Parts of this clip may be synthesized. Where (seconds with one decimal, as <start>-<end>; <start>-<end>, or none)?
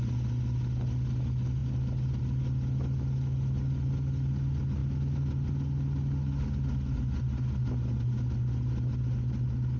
none